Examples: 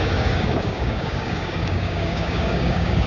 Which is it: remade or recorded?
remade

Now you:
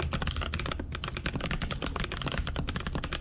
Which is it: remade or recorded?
recorded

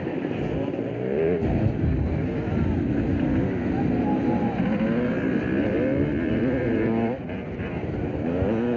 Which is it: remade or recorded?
recorded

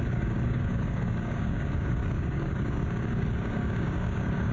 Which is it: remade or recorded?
remade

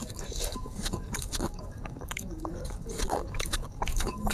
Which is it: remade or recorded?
remade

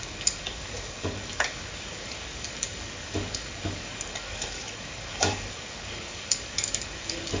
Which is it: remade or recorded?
remade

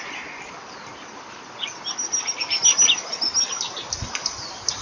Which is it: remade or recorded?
recorded